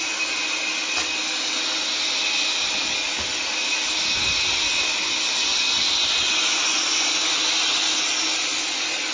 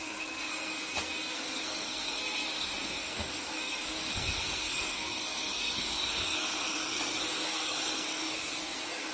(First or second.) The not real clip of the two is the second